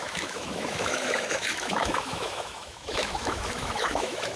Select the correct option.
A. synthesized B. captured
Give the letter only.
A